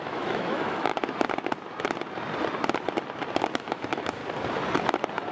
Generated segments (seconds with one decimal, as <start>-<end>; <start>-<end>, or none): 0.0-0.9; 3.6-4.2